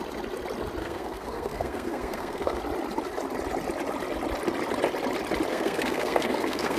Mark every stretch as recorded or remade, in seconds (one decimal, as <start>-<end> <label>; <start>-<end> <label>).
0.0-0.8 recorded; 0.8-2.6 remade; 2.6-5.5 recorded; 5.5-6.8 remade